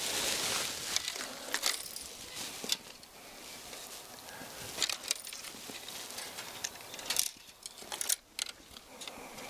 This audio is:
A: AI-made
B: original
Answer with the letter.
B